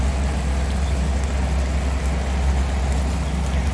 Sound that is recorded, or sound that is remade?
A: recorded